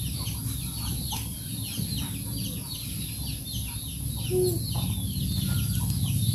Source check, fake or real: real